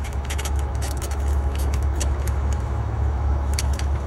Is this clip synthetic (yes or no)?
yes